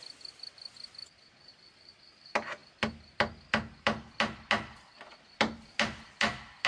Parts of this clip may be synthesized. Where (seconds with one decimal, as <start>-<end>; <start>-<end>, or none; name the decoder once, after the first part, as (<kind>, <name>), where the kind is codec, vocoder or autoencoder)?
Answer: none